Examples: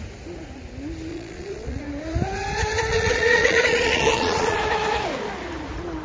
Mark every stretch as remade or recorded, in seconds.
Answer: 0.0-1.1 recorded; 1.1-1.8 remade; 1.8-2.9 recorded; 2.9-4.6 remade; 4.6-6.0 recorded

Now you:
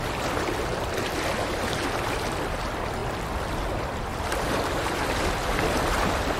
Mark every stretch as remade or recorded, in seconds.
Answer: 0.0-6.4 recorded

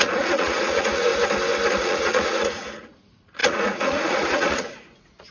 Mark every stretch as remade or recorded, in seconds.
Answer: 0.0-1.1 remade; 1.1-1.7 recorded; 1.7-5.3 remade